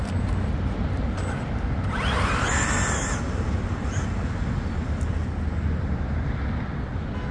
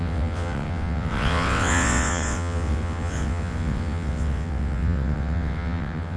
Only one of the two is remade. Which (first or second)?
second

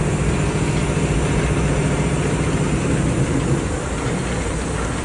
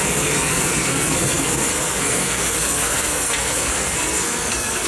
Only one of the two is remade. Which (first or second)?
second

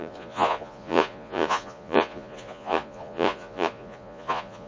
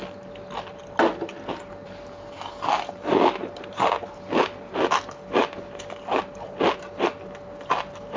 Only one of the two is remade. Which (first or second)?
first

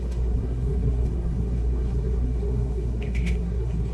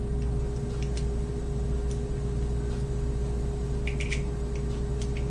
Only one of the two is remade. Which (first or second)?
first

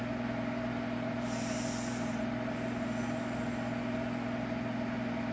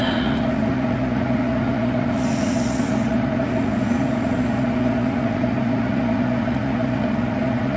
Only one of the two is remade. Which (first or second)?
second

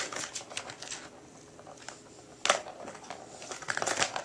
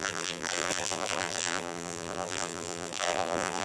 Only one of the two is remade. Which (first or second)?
second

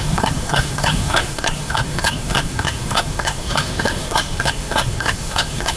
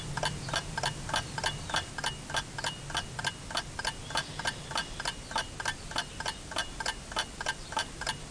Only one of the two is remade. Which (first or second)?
first